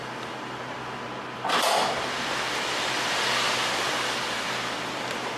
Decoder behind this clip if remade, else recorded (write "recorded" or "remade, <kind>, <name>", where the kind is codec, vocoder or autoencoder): remade, vocoder, BigVGAN v2